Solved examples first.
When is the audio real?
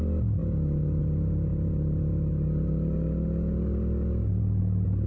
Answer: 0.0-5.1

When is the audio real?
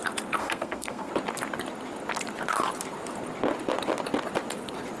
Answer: 0.0-0.4; 1.1-5.0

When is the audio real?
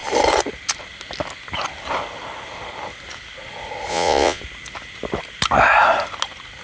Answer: 0.0-3.9; 4.4-6.6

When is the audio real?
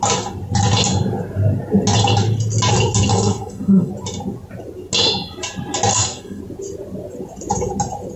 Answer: 0.0-3.1; 3.9-5.9; 6.4-8.2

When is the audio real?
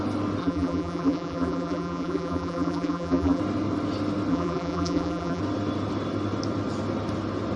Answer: 0.0-0.4; 3.4-4.3; 5.4-7.6